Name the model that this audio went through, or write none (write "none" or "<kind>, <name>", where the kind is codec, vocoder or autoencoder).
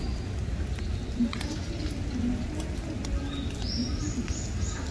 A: none